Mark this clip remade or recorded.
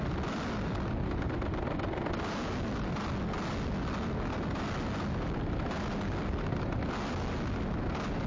recorded